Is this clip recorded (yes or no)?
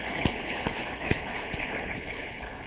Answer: no